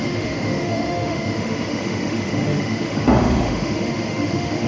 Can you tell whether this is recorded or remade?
remade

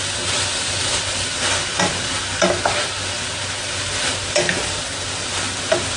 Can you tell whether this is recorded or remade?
recorded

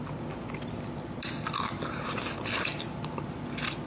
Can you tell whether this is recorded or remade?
recorded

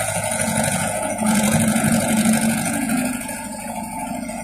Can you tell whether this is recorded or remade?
remade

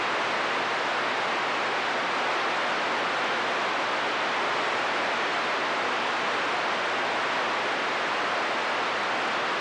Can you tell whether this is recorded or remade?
recorded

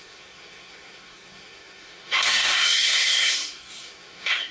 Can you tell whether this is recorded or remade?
remade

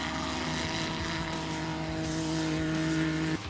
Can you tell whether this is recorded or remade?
recorded